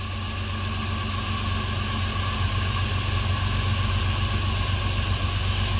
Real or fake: real